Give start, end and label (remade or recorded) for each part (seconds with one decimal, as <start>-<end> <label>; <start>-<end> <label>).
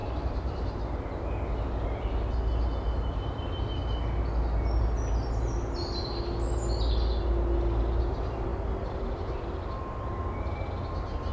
0.0-0.8 remade; 0.8-11.3 recorded